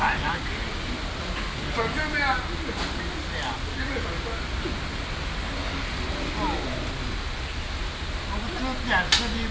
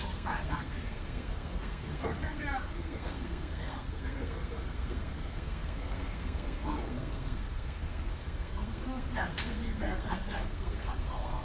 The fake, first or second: second